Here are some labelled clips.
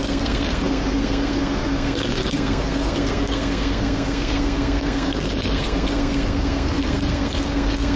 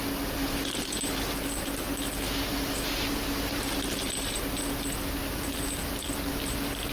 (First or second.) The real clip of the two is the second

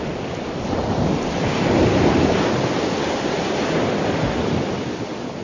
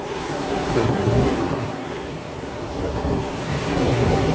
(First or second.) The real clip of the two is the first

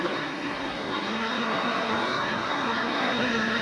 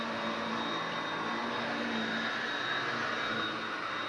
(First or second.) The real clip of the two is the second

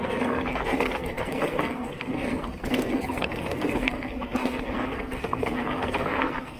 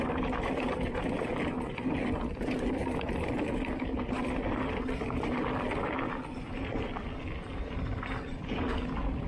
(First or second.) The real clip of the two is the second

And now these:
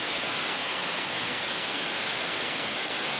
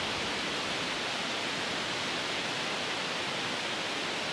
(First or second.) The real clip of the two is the second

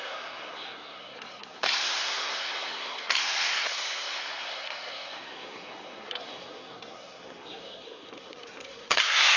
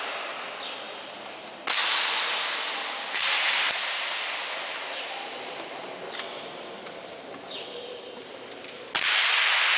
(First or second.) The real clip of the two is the second